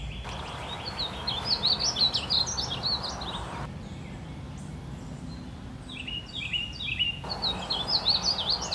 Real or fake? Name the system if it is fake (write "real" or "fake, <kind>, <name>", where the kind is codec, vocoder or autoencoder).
real